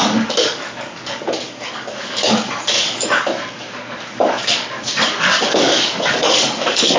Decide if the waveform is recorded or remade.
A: remade